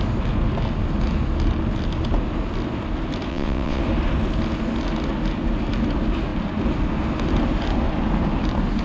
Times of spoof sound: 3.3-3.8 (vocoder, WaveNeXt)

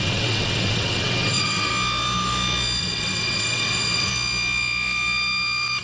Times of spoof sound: 0.0-1.7 (vocoder, WaveNeXt); 2.8-4.1

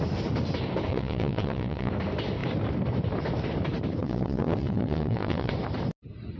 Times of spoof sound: 0.9-1.9 (vocoder, WaveNeXt); 4.0-5.5

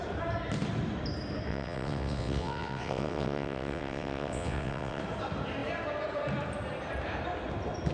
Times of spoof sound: 1.5-5.0 (vocoder, WaveNeXt)